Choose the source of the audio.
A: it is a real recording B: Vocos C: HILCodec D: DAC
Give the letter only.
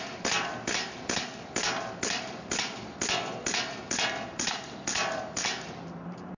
A